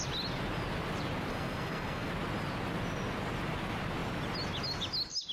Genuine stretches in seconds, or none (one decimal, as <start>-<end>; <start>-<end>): 0.0-1.3; 2.1-5.3